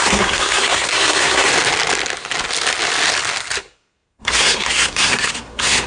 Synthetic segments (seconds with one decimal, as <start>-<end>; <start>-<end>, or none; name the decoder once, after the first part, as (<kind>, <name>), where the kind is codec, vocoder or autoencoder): 0.0-1.5 (codec, SNAC); 3.6-5.9